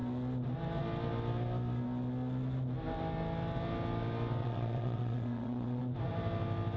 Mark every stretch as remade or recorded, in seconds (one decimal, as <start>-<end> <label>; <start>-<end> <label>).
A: 0.0-4.4 recorded; 4.4-5.8 remade; 5.8-6.8 recorded